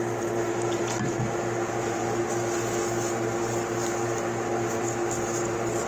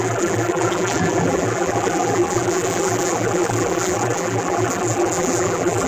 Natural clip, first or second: first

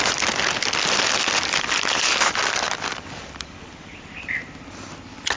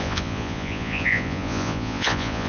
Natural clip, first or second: first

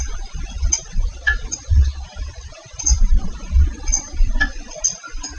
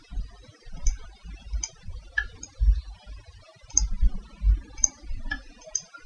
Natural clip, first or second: second